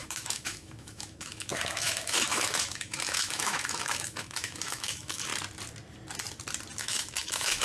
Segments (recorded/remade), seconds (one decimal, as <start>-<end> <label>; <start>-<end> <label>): 0.0-5.3 remade; 5.3-6.8 recorded; 6.8-7.6 remade